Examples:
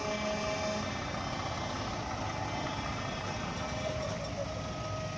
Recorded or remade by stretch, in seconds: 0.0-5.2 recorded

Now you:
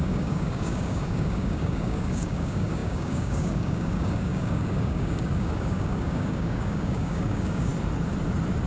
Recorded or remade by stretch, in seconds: 0.0-7.7 remade; 7.7-8.7 recorded

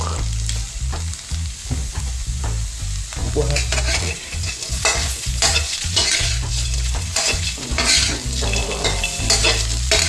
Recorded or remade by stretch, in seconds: 0.0-1.8 recorded; 1.8-2.4 remade; 2.4-3.2 recorded; 3.2-8.2 remade; 8.2-10.1 recorded

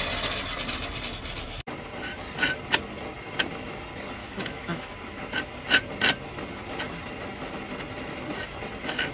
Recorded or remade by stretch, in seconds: 0.0-4.2 recorded; 4.2-4.9 remade; 4.9-9.1 recorded

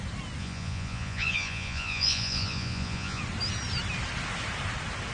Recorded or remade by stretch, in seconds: 0.0-0.4 recorded; 0.4-3.2 remade; 3.2-5.1 recorded